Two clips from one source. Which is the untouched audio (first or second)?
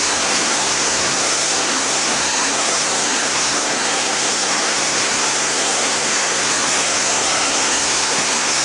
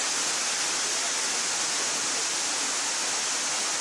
second